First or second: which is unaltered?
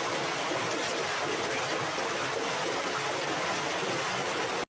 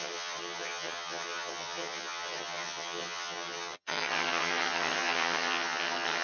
first